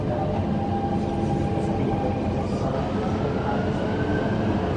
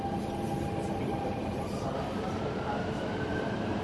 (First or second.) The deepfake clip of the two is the second